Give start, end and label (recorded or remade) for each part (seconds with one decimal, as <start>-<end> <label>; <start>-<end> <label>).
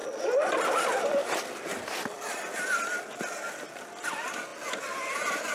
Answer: 0.0-5.5 recorded